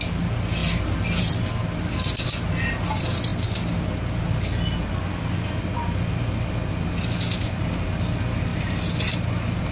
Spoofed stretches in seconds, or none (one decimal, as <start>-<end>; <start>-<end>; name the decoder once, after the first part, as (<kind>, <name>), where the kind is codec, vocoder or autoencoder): none